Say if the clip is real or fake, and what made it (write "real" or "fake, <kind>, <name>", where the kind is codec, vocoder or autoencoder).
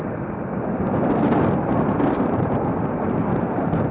real